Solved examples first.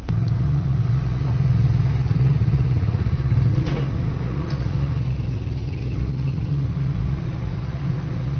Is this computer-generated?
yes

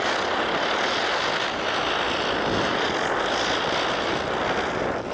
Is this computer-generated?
no